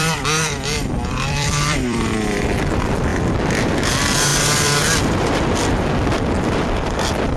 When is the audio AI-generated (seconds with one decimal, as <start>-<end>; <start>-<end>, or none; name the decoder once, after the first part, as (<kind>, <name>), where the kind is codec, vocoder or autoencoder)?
0.0-7.4 (vocoder, BigVGAN v2)